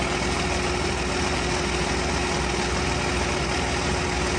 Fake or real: real